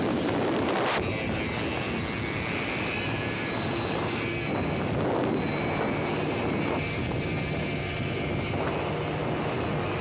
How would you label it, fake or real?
real